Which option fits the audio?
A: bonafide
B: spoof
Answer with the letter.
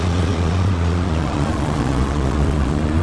B